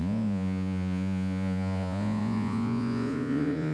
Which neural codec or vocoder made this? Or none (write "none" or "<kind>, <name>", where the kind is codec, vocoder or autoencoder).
vocoder, Vocos